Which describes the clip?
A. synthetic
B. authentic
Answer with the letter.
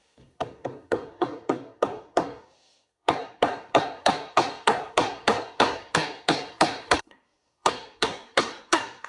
A